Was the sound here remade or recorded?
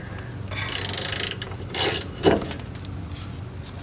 recorded